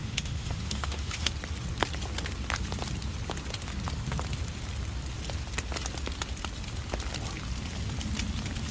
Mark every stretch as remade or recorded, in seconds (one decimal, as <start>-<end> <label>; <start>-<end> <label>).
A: 0.0-1.3 remade; 1.3-8.7 recorded